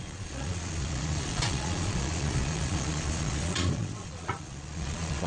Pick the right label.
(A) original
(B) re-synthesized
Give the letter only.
B